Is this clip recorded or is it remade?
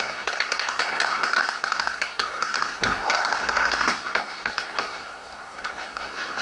remade